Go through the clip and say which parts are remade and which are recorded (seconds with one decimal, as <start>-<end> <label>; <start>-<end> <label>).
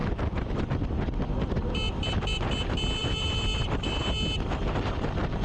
0.0-1.2 remade; 1.2-3.0 recorded; 3.0-4.0 remade; 4.0-5.4 recorded